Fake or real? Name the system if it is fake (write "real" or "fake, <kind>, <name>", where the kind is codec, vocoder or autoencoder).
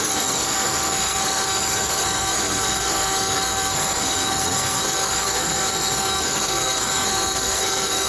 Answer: fake, codec, SNAC